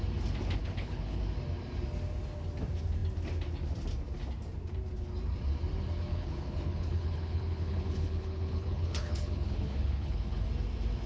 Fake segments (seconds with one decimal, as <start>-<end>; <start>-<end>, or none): 0.6-1.2; 6.1-10.5